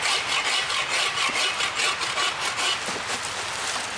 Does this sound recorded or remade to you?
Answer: recorded